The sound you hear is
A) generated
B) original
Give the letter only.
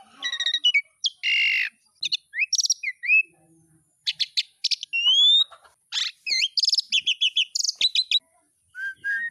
B